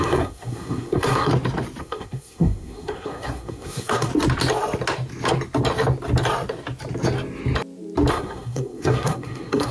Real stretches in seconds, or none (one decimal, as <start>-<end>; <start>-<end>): 1.3-1.8; 4.1-8.1

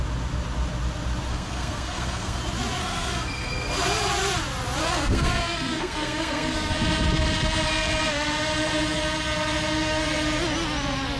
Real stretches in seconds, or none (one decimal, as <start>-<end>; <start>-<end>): 0.0-1.3; 2.4-2.8; 3.7-4.8; 6.7-11.2

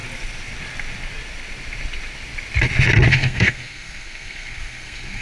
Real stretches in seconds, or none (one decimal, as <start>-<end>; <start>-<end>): 0.0-3.1